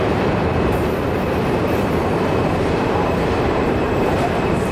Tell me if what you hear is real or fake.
fake